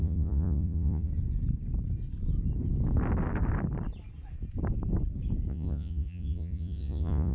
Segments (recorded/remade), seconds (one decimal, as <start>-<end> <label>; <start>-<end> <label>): 0.0-1.1 remade; 1.1-5.5 recorded; 5.5-7.3 remade